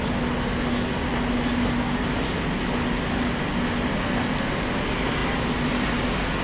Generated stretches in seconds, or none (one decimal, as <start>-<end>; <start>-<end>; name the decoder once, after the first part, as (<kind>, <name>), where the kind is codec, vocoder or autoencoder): none